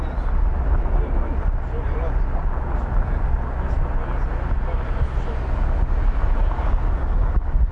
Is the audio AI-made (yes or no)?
no